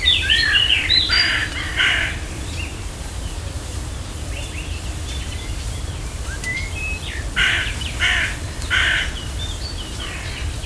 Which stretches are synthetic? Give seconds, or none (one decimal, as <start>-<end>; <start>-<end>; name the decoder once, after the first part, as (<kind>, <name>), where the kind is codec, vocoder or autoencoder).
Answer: 0.0-10.7 (vocoder, BigVGAN v2)